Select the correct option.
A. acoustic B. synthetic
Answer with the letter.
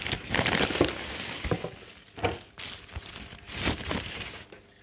A